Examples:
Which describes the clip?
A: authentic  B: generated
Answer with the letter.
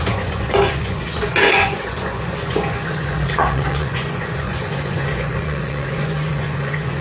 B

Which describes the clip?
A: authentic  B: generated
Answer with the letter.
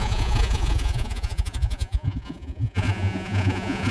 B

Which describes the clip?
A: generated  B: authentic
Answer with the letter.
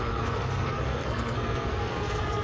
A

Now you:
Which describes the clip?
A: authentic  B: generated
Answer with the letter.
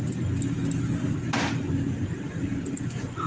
A